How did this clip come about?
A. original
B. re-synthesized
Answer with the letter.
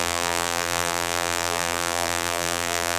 B